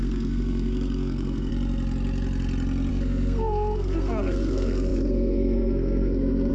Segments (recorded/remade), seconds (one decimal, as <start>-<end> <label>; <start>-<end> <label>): 0.0-1.5 remade; 1.5-2.9 recorded; 2.9-6.5 remade

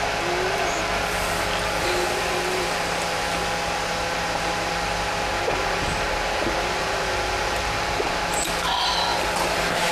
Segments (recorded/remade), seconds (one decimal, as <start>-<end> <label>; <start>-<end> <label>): 0.0-9.9 recorded